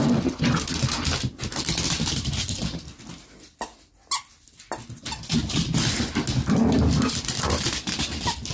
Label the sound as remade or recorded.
recorded